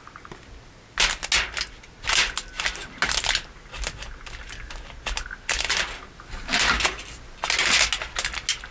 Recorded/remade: recorded